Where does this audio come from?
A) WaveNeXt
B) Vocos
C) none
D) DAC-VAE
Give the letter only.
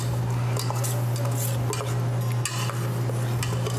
C